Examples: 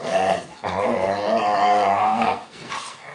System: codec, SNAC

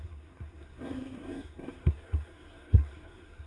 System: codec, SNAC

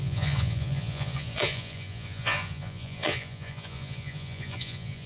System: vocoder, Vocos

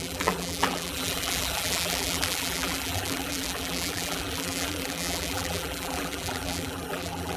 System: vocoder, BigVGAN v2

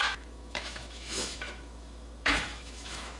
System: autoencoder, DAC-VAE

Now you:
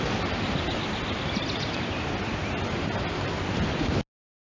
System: none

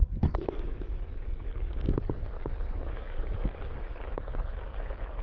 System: codec, DAC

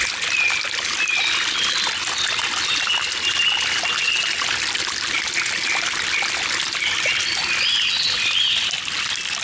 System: none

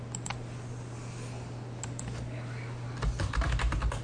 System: none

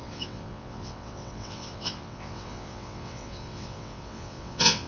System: vocoder, WaveNeXt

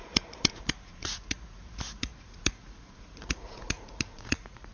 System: vocoder, Vocos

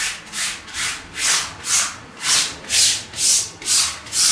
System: none